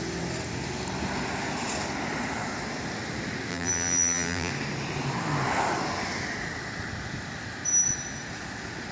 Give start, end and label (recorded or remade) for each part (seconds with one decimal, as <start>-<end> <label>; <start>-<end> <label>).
0.0-3.5 recorded; 3.5-4.5 remade; 4.5-8.9 recorded

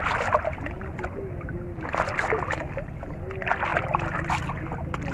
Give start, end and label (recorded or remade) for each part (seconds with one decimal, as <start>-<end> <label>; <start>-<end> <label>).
0.0-5.1 recorded

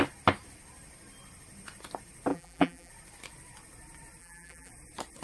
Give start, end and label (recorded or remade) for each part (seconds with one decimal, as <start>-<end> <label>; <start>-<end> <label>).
0.0-2.3 recorded; 2.3-2.9 remade; 2.9-4.2 recorded; 4.2-4.7 remade; 4.7-5.2 recorded

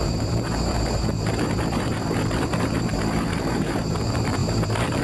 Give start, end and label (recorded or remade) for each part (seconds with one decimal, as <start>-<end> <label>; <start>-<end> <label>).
0.0-5.0 remade

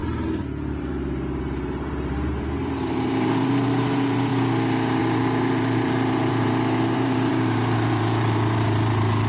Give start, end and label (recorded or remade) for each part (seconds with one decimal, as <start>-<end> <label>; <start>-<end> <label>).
0.0-4.3 remade; 4.3-5.0 recorded; 5.0-9.3 remade

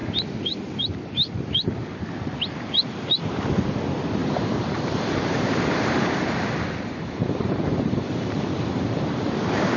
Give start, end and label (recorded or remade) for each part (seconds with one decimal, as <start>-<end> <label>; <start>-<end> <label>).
0.0-4.2 recorded; 4.2-9.3 remade; 9.3-9.8 recorded

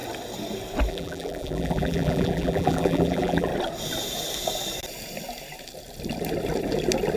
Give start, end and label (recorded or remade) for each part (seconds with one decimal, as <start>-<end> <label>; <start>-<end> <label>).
0.0-0.9 recorded; 0.9-3.5 remade; 3.5-7.2 recorded